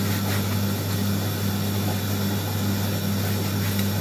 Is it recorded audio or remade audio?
recorded